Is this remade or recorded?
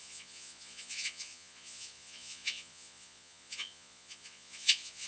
remade